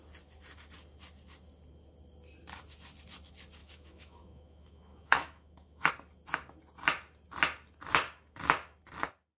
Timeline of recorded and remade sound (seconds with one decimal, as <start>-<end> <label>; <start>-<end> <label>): 0.0-3.6 recorded; 3.6-5.9 remade; 5.9-9.4 recorded

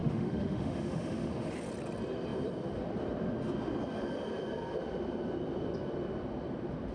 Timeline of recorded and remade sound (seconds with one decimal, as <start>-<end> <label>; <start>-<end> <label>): 0.0-1.5 remade; 1.5-6.9 recorded

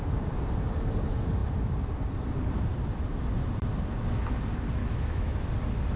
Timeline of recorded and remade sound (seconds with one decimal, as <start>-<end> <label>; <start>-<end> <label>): 0.0-4.8 recorded; 4.8-5.5 remade; 5.5-6.0 recorded